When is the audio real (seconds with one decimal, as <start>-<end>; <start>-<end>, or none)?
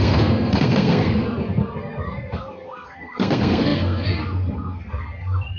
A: none